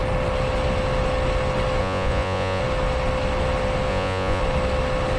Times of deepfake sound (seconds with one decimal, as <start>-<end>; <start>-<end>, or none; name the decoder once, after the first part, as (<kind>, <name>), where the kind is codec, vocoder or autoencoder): 1.8-2.6 (vocoder, Vocos); 3.9-4.4